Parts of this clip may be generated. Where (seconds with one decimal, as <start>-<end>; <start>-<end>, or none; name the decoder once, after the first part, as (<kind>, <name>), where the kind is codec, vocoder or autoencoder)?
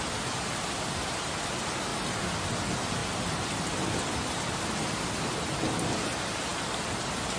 none